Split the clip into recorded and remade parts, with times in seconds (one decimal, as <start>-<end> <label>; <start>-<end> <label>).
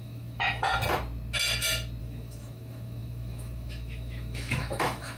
0.0-0.7 remade; 0.7-2.0 recorded; 2.0-5.2 remade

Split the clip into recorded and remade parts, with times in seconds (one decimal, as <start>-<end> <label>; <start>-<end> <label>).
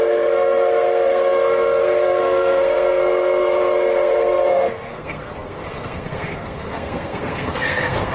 0.0-8.1 remade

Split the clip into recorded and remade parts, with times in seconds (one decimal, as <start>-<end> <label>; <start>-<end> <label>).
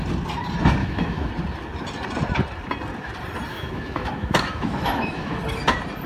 0.0-0.8 recorded; 0.8-1.3 remade; 1.3-3.5 recorded; 3.5-5.4 remade; 5.4-6.1 recorded